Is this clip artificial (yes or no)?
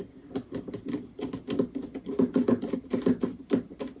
no